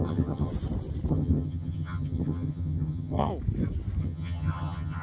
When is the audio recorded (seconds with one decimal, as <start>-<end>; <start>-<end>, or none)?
0.5-1.1; 3.3-4.0